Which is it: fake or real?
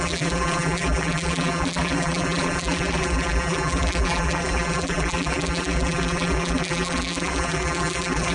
fake